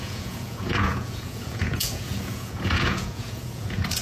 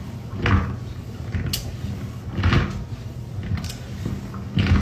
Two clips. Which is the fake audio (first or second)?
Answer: first